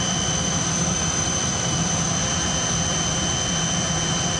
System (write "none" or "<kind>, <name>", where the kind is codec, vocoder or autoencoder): none